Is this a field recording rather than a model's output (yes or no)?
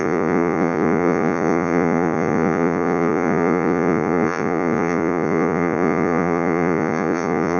no